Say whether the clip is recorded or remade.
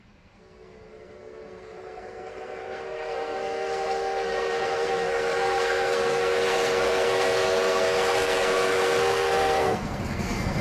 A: remade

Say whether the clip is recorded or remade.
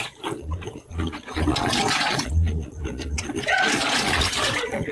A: remade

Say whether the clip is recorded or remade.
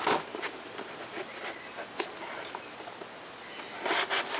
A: recorded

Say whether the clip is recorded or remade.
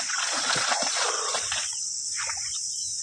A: remade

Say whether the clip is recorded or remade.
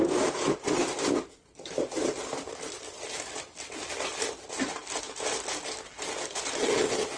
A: recorded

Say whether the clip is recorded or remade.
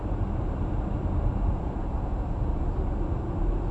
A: recorded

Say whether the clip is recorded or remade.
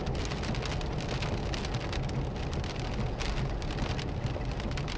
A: recorded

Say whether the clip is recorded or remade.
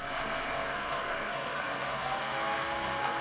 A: remade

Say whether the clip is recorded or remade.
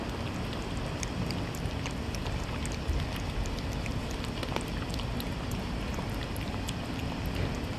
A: recorded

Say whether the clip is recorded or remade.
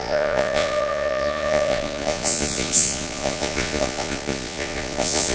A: remade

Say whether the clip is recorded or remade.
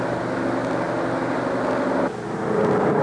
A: recorded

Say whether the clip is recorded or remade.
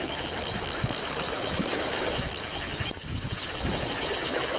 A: remade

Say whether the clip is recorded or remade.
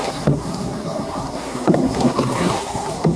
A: remade